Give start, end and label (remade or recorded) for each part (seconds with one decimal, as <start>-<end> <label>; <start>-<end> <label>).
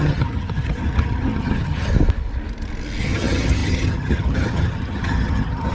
0.0-1.9 remade; 1.9-3.0 recorded; 3.0-5.7 remade